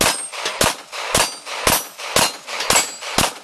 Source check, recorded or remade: recorded